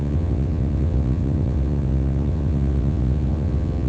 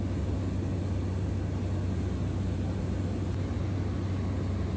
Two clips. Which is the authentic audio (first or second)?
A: second